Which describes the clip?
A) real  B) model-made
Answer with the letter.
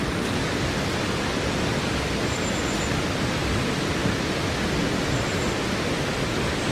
A